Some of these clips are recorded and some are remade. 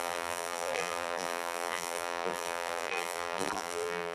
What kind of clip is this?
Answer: remade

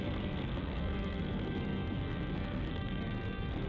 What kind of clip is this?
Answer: remade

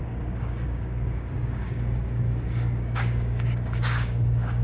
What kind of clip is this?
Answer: remade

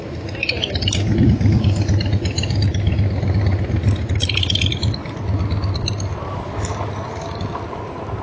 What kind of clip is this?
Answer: recorded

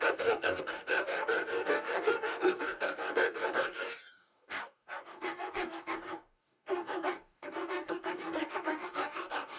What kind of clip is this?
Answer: remade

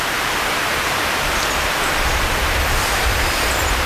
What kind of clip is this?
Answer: remade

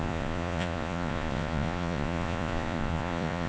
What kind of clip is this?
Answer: remade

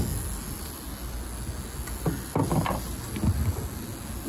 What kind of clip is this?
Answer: recorded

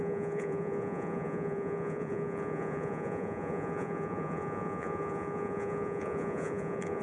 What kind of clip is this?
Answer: remade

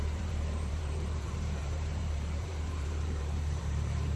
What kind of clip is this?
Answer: remade